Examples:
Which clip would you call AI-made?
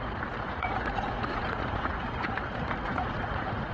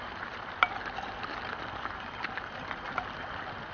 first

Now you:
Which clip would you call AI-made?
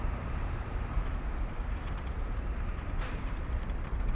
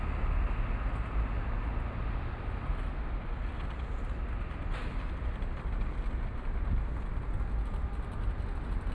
first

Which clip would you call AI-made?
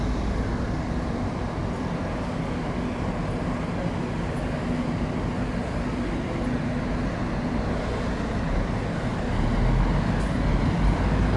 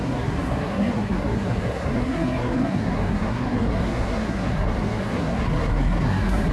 second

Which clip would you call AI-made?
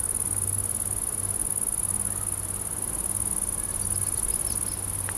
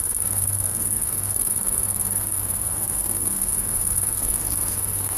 second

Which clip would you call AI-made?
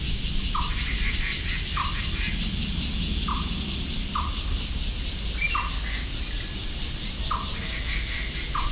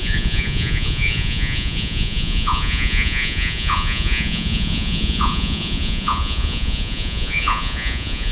second